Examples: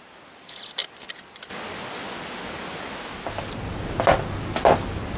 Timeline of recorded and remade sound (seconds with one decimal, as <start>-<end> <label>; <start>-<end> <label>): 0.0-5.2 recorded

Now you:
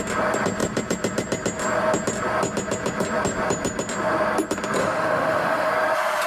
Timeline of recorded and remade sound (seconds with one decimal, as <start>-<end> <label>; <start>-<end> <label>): 0.0-4.8 recorded; 4.8-5.7 remade; 5.7-6.3 recorded

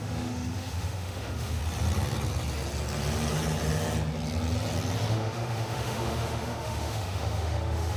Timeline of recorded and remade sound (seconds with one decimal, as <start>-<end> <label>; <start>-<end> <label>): 0.0-1.6 remade; 1.6-5.1 recorded; 5.1-8.0 remade

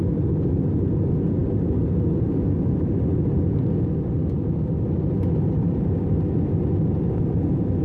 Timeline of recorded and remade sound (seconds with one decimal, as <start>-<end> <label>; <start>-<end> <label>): 0.0-7.8 recorded